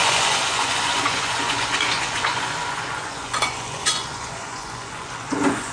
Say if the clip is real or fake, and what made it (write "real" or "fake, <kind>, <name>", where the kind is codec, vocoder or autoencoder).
fake, vocoder, Vocos